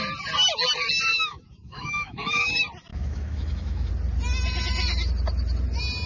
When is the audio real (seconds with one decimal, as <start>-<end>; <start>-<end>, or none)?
0.0-1.1; 2.5-2.9; 3.9-6.1